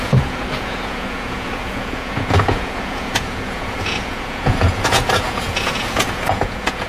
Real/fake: fake